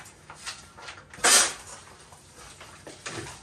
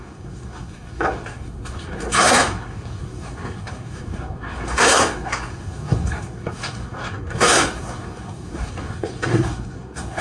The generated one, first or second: second